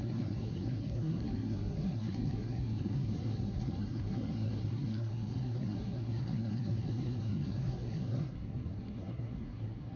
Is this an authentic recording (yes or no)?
no